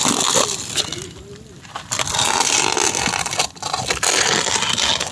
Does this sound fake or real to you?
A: real